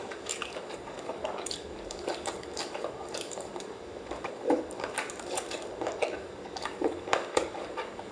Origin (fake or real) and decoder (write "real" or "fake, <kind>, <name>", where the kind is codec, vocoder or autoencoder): fake, codec, DAC